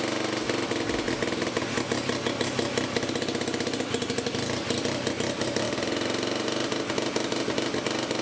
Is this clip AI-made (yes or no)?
no